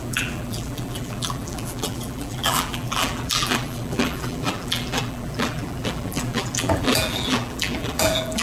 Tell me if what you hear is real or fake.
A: fake